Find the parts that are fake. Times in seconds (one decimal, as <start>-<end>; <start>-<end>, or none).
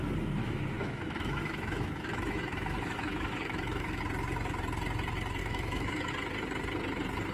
0.4-4.0; 5.4-6.1